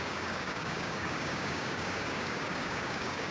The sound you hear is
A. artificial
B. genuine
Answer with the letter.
A